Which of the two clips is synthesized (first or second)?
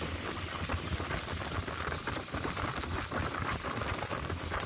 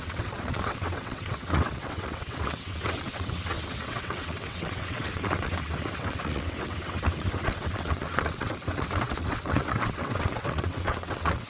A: second